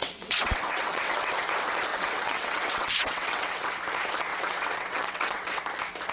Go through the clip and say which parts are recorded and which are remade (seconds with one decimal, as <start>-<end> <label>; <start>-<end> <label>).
0.0-1.3 remade; 1.3-1.9 recorded; 1.9-3.7 remade; 3.7-4.3 recorded; 4.3-5.6 remade; 5.6-6.1 recorded